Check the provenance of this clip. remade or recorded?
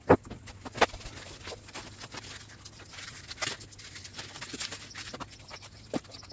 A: recorded